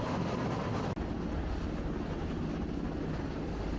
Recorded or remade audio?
recorded